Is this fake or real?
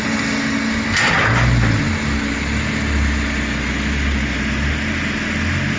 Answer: real